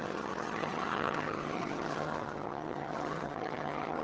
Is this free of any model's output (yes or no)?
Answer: no